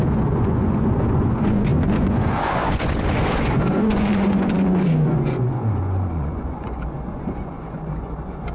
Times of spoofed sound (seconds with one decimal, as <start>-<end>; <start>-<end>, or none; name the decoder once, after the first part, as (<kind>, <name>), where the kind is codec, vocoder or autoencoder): 0.0-8.5 (vocoder, Vocos)